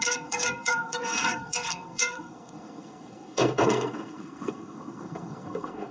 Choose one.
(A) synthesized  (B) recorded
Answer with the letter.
A